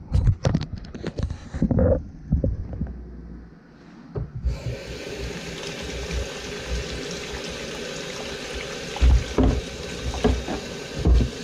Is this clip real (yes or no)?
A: yes